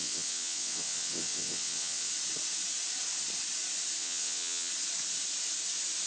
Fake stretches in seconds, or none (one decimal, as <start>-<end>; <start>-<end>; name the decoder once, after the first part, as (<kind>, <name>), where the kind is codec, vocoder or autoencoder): 0.0-2.1 (vocoder, WaveNeXt); 4.0-4.7